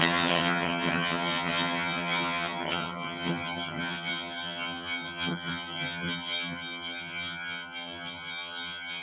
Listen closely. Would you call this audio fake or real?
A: fake